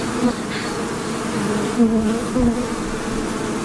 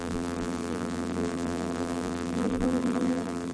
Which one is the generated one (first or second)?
second